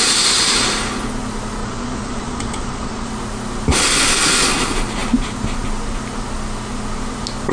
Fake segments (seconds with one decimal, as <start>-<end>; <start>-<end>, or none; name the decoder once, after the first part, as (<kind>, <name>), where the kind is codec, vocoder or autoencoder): 1.6-3.1 (vocoder, Vocos)